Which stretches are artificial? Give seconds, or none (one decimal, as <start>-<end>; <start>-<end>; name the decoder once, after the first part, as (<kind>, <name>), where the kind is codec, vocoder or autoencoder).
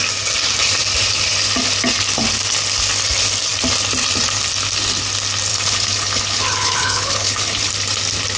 5.5-7.7 (codec, HILCodec)